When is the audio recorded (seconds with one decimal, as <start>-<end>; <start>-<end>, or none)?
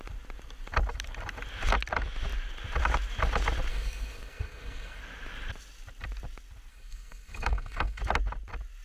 0.0-3.7; 5.0-6.7; 8.0-8.8